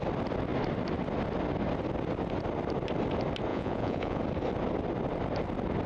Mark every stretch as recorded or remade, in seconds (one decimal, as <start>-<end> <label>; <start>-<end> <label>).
0.0-3.5 recorded; 3.5-4.2 remade; 4.2-5.9 recorded